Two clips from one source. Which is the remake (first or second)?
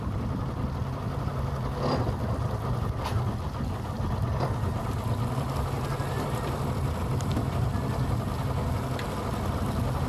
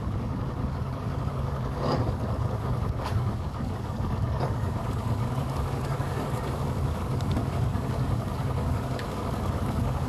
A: second